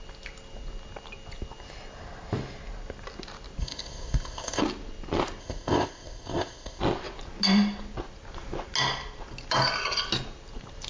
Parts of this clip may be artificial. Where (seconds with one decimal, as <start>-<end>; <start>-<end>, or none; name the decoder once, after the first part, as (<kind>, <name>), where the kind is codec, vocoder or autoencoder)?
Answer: 3.6-4.6 (codec, ZipCodec); 5.4-6.8